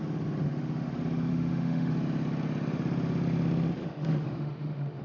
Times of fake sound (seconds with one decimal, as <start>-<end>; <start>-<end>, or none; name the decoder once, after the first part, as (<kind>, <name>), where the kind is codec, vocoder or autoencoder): 0.4-0.9 (autoencoder, DAC-VAE); 1.3-1.9; 3.8-5.0